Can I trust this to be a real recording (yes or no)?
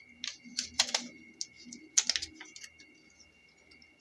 yes